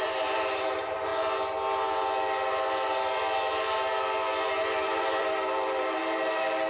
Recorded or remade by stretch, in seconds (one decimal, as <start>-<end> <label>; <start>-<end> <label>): 0.0-1.1 remade; 1.1-4.6 recorded; 4.6-6.0 remade; 6.0-6.7 recorded